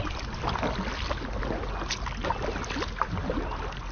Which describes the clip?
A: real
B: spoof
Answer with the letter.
A